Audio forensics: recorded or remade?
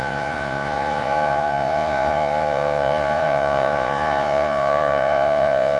remade